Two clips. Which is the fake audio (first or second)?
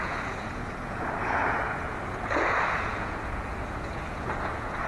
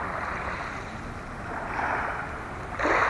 first